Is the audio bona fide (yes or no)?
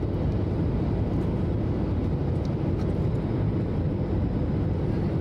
yes